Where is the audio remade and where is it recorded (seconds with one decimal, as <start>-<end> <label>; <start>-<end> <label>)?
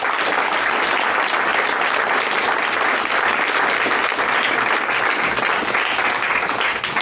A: 0.0-7.0 recorded